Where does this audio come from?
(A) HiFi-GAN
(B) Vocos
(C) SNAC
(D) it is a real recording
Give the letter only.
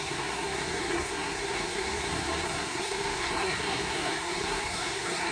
C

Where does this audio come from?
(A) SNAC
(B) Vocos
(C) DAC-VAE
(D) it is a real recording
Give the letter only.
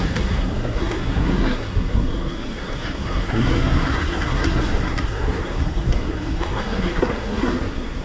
A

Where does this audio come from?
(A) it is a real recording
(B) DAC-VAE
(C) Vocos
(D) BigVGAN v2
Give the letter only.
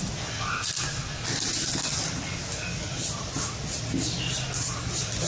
A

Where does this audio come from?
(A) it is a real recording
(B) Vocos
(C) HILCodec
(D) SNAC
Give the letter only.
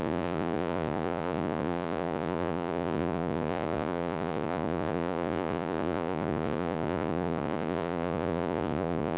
B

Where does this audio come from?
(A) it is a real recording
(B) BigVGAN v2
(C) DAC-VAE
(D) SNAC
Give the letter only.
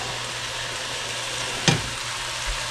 A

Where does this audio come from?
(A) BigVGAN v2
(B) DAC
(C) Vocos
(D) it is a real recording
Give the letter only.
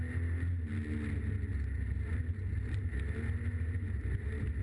D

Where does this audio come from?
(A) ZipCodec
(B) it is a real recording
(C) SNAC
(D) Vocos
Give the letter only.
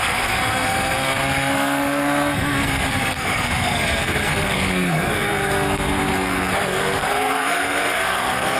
C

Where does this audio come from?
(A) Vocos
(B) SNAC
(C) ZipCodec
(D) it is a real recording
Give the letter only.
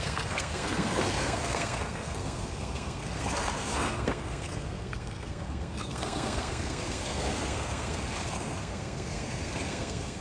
B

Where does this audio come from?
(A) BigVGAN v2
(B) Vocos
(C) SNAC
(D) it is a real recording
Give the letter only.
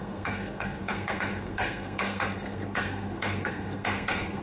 C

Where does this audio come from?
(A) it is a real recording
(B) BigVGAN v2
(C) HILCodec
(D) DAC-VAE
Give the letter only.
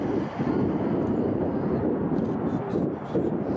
A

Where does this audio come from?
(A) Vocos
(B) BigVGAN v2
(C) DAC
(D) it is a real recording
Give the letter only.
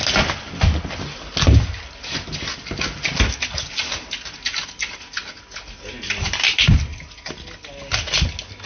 D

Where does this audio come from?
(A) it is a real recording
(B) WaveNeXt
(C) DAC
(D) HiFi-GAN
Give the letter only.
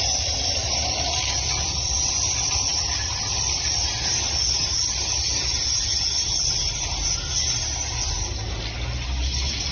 A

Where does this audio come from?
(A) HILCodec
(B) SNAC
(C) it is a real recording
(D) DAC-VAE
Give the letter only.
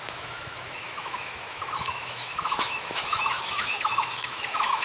D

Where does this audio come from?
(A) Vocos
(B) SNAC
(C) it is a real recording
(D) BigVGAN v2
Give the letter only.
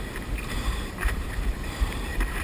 D